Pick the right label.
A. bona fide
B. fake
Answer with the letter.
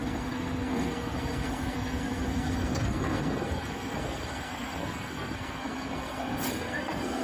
B